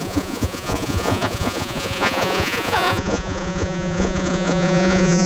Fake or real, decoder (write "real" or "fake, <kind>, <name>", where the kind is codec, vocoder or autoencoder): fake, vocoder, Vocos